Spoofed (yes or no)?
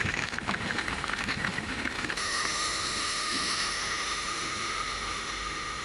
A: yes